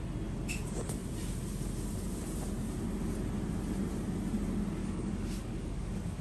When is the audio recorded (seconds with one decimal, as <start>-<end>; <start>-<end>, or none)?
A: 0.0-4.8